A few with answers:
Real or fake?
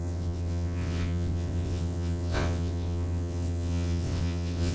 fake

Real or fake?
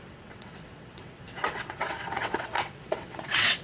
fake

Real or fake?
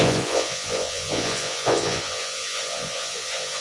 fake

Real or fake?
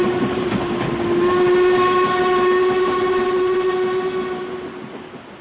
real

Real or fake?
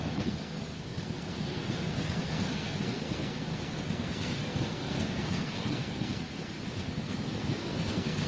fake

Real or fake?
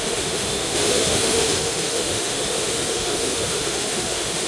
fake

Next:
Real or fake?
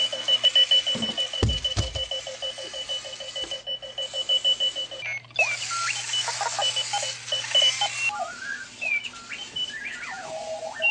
real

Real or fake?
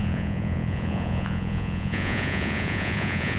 fake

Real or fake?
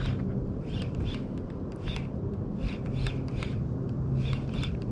real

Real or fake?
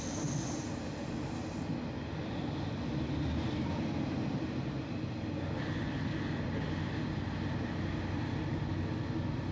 real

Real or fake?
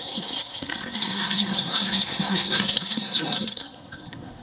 fake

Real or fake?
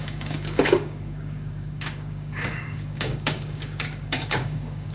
fake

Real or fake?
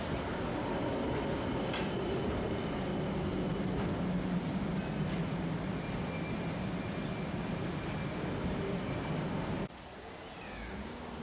real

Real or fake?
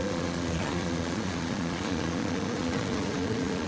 fake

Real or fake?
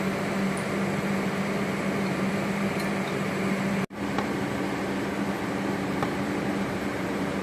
fake